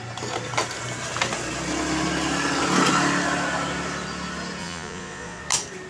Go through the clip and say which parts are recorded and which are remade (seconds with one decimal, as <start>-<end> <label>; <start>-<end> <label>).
0.0-4.6 recorded; 4.6-5.4 remade; 5.4-5.9 recorded